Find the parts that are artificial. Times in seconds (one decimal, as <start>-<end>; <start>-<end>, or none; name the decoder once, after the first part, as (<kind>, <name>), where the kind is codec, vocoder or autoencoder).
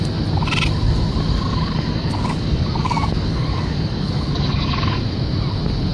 1.5-5.0 (codec, DAC)